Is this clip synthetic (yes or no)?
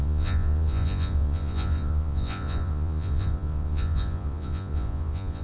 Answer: yes